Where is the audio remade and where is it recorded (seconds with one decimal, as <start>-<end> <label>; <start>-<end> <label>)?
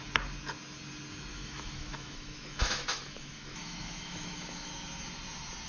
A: 0.0-1.3 recorded; 1.3-4.7 remade; 4.7-5.7 recorded